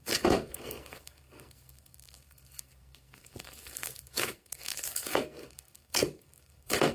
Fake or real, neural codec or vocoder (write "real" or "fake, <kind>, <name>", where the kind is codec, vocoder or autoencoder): fake, codec, SNAC